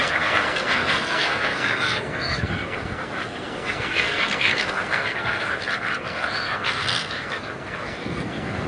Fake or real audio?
fake